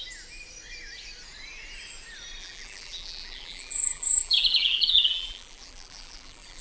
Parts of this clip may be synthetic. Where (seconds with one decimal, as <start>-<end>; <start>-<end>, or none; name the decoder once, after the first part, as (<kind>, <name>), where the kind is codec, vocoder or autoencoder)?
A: 2.4-6.6 (vocoder, BigVGAN v2)